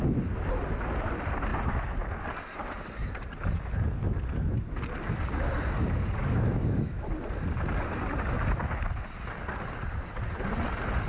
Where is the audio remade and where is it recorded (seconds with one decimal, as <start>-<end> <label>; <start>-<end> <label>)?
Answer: 0.0-6.2 recorded; 6.2-7.1 remade; 7.1-11.1 recorded